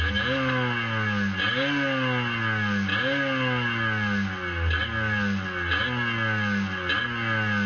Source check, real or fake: real